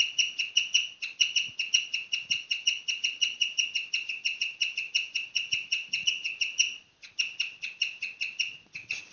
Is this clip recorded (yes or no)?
no